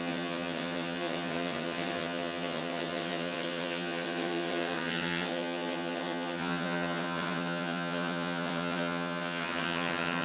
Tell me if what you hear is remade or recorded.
remade